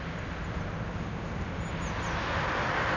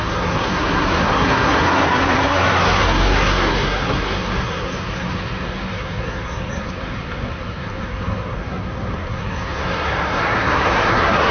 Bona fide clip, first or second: first